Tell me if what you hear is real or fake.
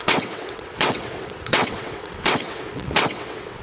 fake